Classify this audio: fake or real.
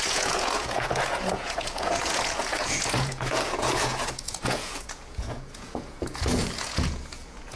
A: fake